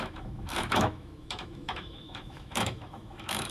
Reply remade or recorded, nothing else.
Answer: remade